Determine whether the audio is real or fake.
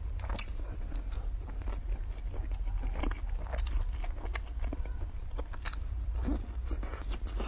real